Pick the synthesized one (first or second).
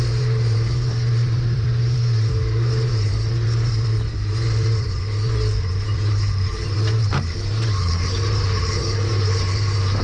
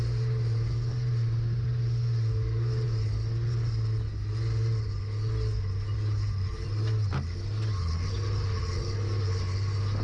first